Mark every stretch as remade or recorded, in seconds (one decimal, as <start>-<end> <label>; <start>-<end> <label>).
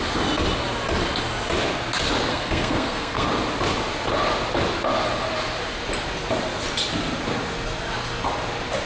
0.0-2.3 recorded; 2.3-3.3 remade; 3.3-8.9 recorded